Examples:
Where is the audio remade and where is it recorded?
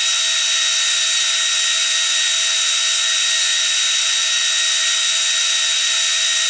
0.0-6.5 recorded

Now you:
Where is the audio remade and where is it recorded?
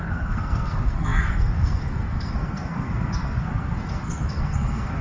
0.0-5.0 remade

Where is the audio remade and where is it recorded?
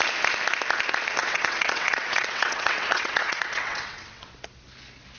0.0-1.2 recorded; 1.2-4.3 remade; 4.3-5.2 recorded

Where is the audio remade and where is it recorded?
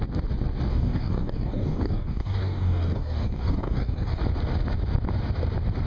0.0-0.7 recorded; 0.7-4.2 remade; 4.2-5.9 recorded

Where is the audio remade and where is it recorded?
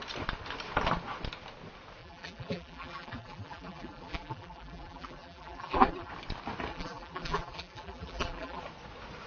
0.0-2.0 recorded; 2.0-6.1 remade; 6.1-6.7 recorded; 6.7-8.6 remade; 8.6-9.3 recorded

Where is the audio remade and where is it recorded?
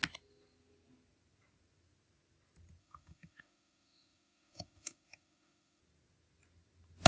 0.0-2.8 recorded; 2.8-5.8 remade; 5.8-7.1 recorded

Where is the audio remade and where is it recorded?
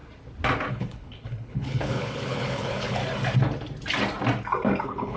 0.0-0.7 recorded; 0.7-3.0 remade; 3.0-4.8 recorded; 4.8-5.2 remade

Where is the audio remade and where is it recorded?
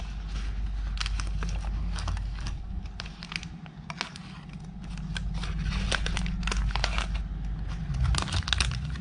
0.0-1.8 recorded; 1.8-2.8 remade; 2.8-9.0 recorded